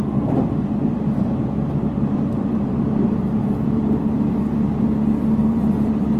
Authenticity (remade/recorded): remade